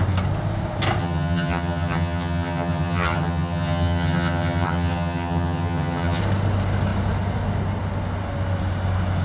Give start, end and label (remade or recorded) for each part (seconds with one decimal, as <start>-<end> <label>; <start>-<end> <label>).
0.0-1.0 recorded; 1.0-6.2 remade; 6.2-9.2 recorded

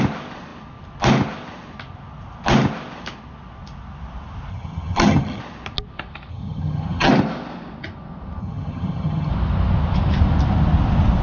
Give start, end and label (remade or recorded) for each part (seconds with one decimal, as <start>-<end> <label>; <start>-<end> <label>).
0.0-4.5 recorded; 4.5-5.4 remade; 5.4-6.3 recorded; 6.3-7.1 remade; 7.1-8.4 recorded; 8.4-9.3 remade; 9.3-11.2 recorded

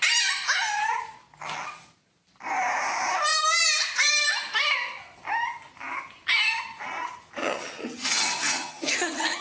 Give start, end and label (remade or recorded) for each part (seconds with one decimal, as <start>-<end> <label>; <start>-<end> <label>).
0.0-7.4 recorded; 7.4-9.4 remade

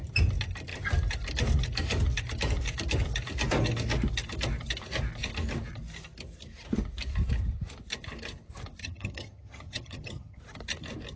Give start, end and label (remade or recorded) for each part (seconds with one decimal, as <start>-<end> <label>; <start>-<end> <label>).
0.0-8.8 recorded; 8.8-10.4 remade; 10.4-11.2 recorded

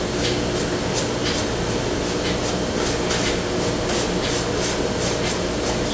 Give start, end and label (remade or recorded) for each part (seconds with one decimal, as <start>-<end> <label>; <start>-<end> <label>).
0.0-5.9 recorded

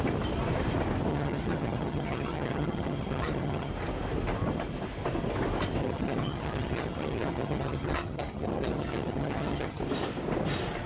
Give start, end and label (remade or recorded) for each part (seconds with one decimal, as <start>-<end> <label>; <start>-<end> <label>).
0.0-1.1 recorded; 1.1-3.7 remade; 3.7-5.8 recorded; 5.8-9.8 remade; 9.8-10.9 recorded

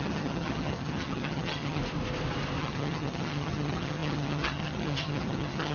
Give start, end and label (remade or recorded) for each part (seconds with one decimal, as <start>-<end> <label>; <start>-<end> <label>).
0.0-1.8 remade; 1.8-2.6 recorded; 2.6-5.7 remade

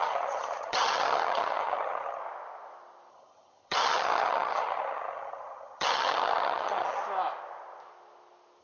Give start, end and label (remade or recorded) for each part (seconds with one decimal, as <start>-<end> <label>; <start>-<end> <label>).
0.0-2.2 remade; 2.2-3.1 recorded; 3.1-7.0 remade; 7.0-8.6 recorded